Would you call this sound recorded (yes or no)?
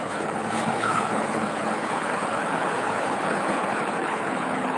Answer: no